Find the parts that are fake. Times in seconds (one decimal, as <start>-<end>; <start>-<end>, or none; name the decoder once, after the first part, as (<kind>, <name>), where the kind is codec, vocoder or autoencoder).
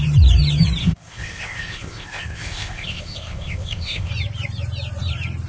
0.8-4.1 (codec, ZipCodec)